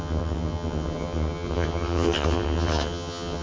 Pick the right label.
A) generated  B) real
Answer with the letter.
A